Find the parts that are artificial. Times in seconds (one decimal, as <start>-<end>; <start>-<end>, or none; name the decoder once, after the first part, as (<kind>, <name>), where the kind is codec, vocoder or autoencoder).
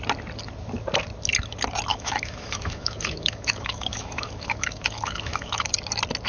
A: 1.9-5.7 (autoencoder, DAC-VAE)